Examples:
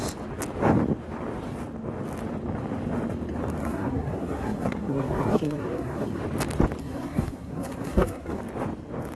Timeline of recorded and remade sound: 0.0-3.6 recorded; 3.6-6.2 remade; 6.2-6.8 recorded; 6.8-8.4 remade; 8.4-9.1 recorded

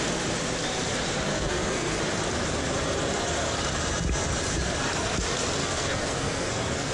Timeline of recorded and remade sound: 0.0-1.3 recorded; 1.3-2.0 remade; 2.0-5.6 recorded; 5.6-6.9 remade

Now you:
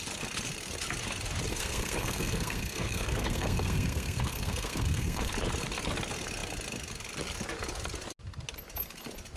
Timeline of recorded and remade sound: 0.0-1.5 recorded; 1.5-5.3 remade; 5.3-9.4 recorded

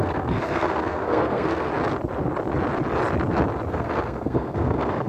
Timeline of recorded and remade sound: 0.0-1.7 remade; 1.7-3.7 recorded; 3.7-5.1 remade